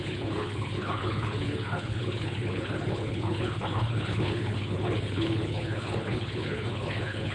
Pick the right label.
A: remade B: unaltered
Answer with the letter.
A